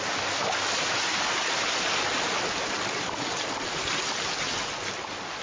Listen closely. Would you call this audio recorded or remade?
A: recorded